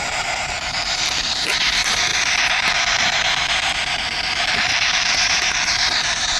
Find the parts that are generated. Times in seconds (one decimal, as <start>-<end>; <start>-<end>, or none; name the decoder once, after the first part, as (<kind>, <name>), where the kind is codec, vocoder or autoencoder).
0.0-2.1 (vocoder, BigVGAN v2); 4.5-6.4